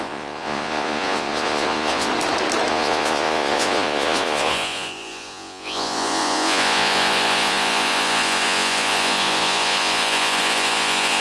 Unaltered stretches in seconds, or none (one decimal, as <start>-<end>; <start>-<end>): 2.1-2.7

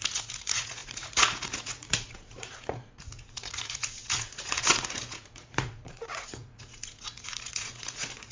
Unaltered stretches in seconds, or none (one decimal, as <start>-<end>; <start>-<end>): none

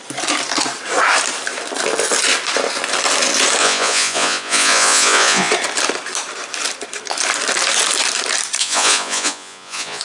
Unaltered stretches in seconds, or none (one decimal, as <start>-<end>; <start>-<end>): 0.0-3.6; 5.5-8.6

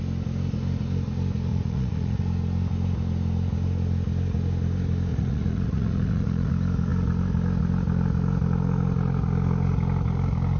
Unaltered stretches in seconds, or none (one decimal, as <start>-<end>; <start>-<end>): 0.0-1.5; 2.2-5.1; 6.5-10.6

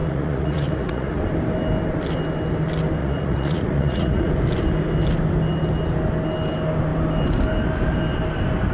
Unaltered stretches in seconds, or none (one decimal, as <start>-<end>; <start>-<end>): 1.2-3.0; 4.3-8.7

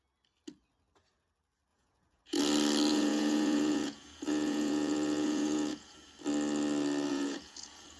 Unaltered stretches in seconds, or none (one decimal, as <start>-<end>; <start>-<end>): 0.0-1.7; 2.4-2.9; 6.1-7.1

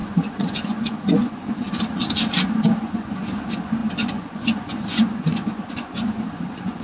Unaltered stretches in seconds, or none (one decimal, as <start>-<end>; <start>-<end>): 1.5-2.8